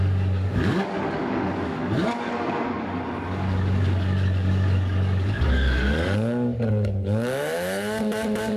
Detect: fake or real fake